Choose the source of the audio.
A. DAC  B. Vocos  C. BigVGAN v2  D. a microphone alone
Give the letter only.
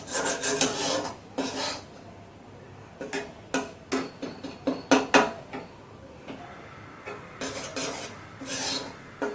D